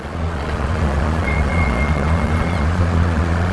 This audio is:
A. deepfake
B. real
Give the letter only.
A